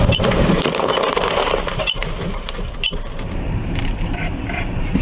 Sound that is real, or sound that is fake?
fake